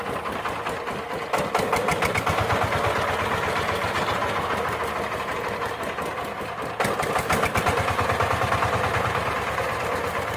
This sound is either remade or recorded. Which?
recorded